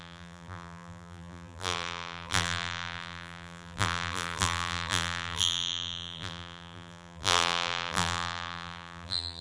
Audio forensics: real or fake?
fake